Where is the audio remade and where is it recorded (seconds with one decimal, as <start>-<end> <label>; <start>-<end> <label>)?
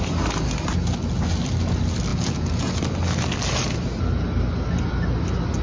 0.0-2.1 recorded; 2.1-2.8 remade; 2.8-5.6 recorded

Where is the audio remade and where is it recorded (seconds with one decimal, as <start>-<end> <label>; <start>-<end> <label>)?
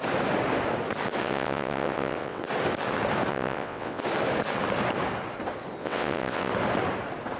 0.0-1.2 recorded; 1.2-2.4 remade; 2.4-3.3 recorded; 3.3-4.0 remade; 4.0-5.8 recorded; 5.8-6.5 remade; 6.5-7.4 recorded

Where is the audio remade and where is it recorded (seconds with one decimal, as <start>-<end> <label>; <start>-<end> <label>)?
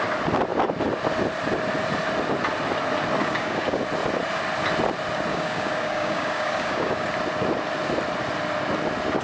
0.0-3.2 recorded; 3.2-3.8 remade; 3.8-5.3 recorded; 5.3-7.1 remade; 7.1-9.2 recorded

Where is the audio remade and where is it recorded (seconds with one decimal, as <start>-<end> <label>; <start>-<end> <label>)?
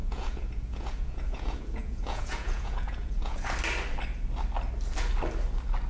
0.0-3.5 remade; 3.5-5.9 recorded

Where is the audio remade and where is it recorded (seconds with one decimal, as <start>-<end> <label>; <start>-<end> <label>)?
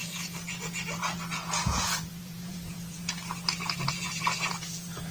0.0-3.0 remade; 3.0-3.9 recorded; 3.9-5.1 remade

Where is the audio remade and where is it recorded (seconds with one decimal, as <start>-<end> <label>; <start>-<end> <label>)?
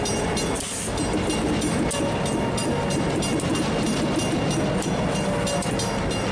0.0-6.3 recorded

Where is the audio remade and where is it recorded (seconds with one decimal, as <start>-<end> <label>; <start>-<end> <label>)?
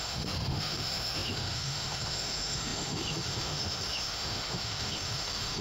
0.0-5.6 remade